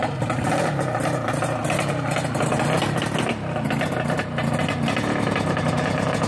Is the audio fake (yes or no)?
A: no